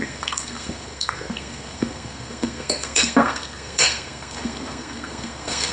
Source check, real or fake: fake